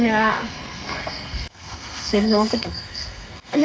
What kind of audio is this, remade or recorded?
remade